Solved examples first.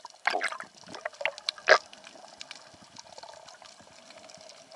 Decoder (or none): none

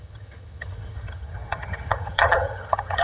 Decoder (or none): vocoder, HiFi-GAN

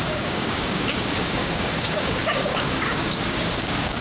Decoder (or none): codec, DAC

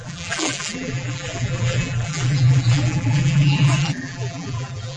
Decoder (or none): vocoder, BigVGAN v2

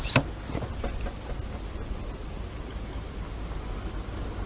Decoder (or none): none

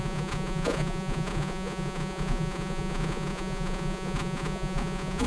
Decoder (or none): vocoder, Vocos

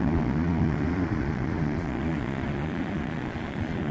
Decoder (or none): vocoder, Vocos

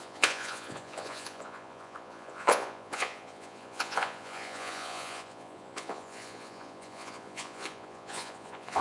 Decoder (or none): vocoder, Vocos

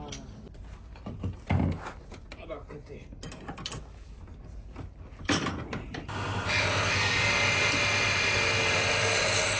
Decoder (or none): none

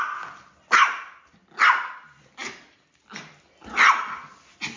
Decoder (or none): none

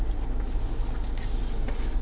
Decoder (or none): none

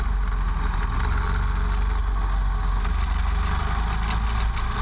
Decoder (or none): none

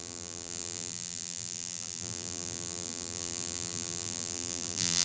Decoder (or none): vocoder, BigVGAN v2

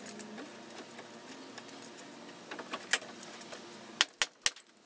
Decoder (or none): none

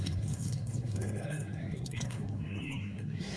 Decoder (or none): codec, SNAC